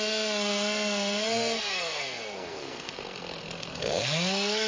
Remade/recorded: remade